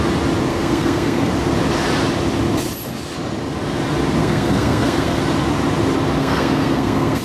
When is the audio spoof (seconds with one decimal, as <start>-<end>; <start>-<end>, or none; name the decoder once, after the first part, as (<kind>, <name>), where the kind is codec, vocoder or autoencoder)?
0.5-1.3 (codec, SNAC); 4.2-5.2; 6.2-7.2